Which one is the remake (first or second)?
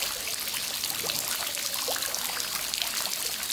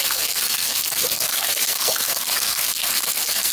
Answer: second